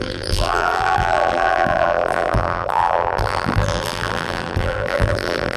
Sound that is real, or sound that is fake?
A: fake